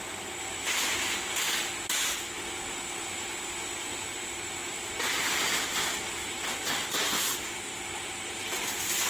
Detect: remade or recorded recorded